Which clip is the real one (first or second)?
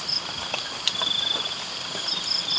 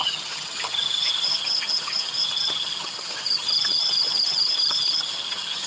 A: first